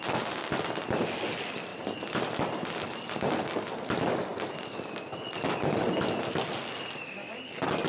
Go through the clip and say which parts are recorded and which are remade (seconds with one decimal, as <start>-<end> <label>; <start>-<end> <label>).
0.0-1.7 remade; 1.7-2.4 recorded; 2.4-7.9 remade